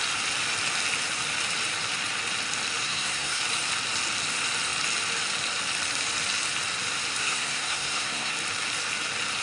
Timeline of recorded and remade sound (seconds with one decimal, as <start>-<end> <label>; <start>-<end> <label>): 0.0-2.8 recorded; 2.8-3.4 remade; 3.4-7.2 recorded; 7.2-8.3 remade; 8.3-9.4 recorded